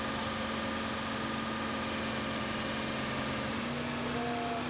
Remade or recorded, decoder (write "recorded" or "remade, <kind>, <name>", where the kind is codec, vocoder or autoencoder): recorded